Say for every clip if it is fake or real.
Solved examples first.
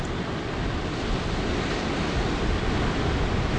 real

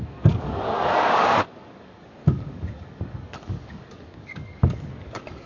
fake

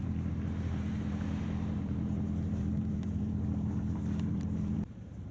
fake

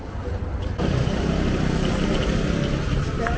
real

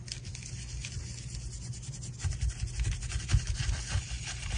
real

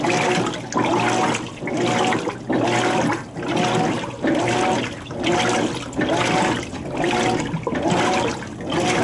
real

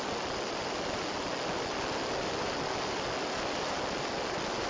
real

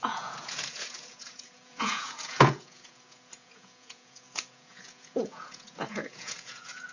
fake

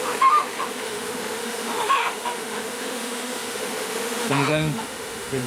fake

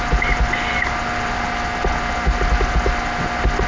real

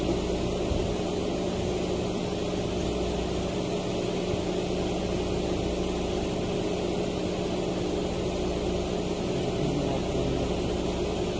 real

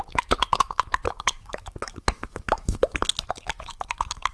fake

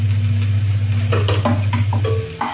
real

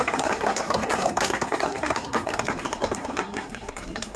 fake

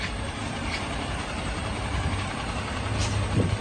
fake